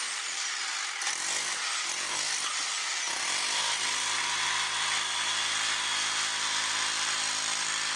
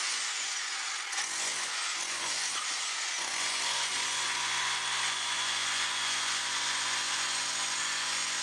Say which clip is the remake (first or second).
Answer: second